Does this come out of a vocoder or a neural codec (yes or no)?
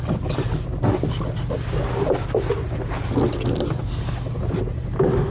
no